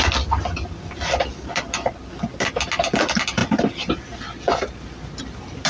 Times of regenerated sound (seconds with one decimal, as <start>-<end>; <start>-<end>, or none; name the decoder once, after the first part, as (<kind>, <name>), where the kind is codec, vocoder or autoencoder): none

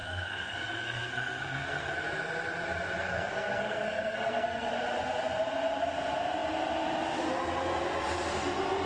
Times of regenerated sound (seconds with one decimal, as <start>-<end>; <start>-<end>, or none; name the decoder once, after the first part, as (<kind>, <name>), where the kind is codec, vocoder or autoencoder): 0.0-2.0 (codec, SNAC); 3.0-4.7

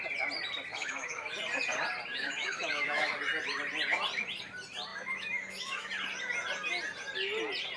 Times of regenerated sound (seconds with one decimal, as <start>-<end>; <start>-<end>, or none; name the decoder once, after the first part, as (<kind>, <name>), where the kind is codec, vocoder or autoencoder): 0.7-1.4 (autoencoder, DAC-VAE); 2.1-3.1; 4.9-5.9

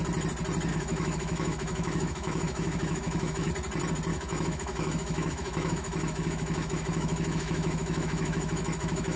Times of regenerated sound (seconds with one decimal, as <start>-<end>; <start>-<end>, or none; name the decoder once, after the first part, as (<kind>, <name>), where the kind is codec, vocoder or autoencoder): 0.7-3.5 (autoencoder, DAC-VAE); 4.1-9.2

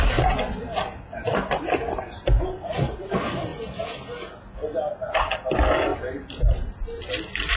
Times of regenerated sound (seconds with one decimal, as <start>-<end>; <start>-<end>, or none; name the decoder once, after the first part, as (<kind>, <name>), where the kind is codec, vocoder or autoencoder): none

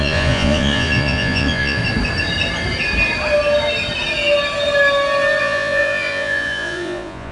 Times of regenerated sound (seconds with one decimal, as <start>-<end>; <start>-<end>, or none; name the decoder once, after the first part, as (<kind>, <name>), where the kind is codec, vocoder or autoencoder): 0.0-1.8 (vocoder, Vocos); 5.4-7.3

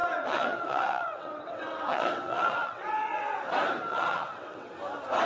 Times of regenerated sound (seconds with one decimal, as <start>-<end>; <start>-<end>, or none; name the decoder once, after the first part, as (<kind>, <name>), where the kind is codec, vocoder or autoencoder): 0.0-3.2 (vocoder, WaveNeXt); 3.9-4.7